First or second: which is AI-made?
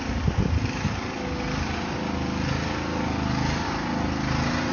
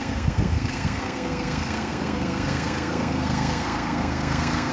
second